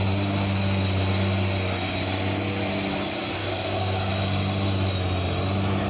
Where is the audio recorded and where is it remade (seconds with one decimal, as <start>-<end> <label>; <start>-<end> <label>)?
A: 0.0-3.4 recorded; 3.4-4.1 remade; 4.1-5.9 recorded